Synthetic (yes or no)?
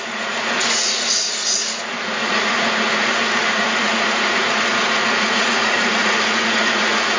yes